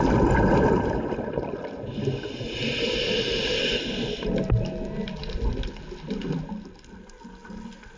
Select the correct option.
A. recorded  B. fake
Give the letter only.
A